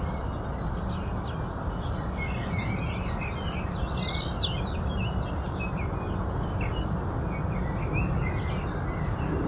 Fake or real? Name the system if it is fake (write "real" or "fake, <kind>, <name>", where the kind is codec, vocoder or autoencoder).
real